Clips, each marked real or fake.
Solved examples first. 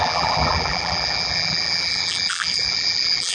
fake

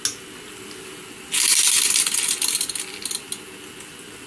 real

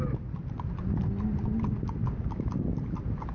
real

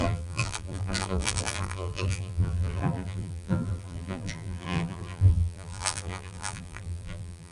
fake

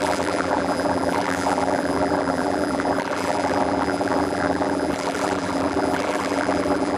fake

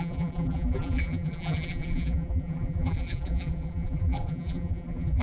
fake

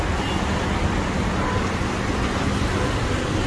fake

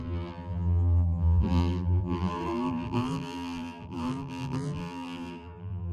fake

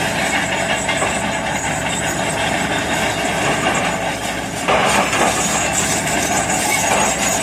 real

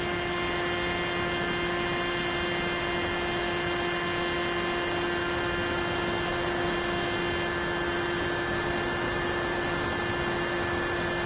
real